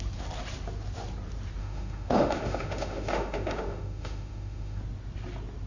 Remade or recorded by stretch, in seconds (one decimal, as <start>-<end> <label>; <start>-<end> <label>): 0.0-1.6 recorded; 1.6-4.8 remade; 4.8-5.7 recorded